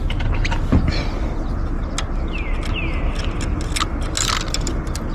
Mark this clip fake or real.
real